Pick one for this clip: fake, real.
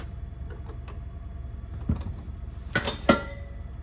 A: real